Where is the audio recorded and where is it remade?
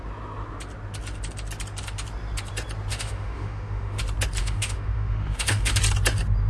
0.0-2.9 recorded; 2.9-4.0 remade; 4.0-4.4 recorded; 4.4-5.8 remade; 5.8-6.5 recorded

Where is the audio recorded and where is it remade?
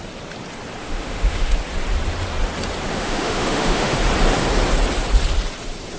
0.0-0.8 recorded; 0.8-1.5 remade; 1.5-2.9 recorded; 2.9-4.0 remade; 4.0-6.0 recorded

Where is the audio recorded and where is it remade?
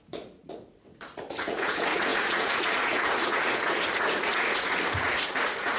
0.0-5.8 remade